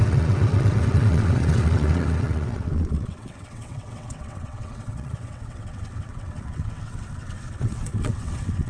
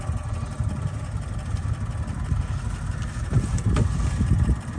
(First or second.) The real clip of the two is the second